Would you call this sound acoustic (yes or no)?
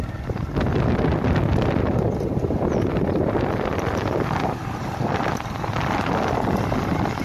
yes